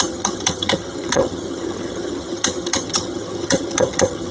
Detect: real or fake fake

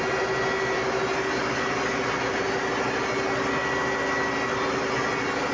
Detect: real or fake real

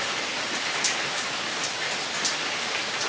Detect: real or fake real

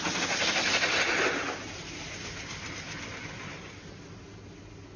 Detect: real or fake real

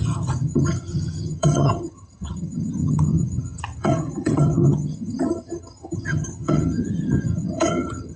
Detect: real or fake fake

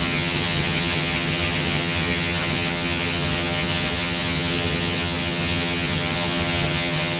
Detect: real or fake fake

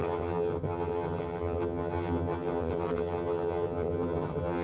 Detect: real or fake fake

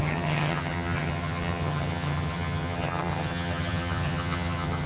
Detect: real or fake fake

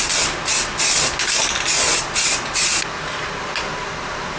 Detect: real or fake real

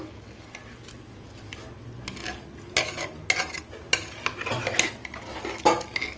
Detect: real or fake real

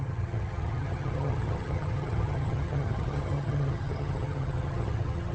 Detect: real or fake fake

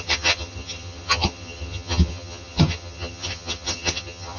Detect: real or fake fake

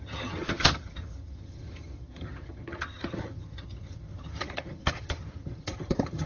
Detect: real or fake fake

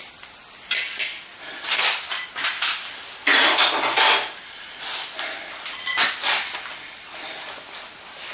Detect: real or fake real